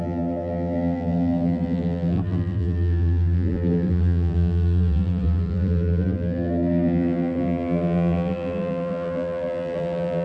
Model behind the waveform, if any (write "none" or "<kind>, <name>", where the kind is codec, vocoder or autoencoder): vocoder, BigVGAN v2